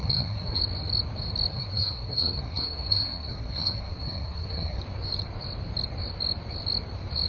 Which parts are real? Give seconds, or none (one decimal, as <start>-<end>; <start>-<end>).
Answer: 0.6-1.5; 4.8-7.3